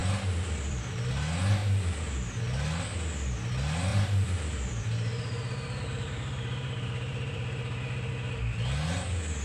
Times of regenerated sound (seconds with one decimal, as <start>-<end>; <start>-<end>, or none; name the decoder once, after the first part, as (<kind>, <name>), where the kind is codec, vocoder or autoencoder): 0.0-1.1 (vocoder, BigVGAN v2); 1.6-2.4; 3.9-8.1